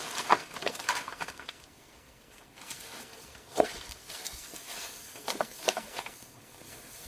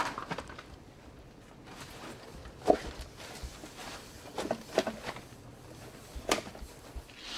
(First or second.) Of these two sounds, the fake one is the first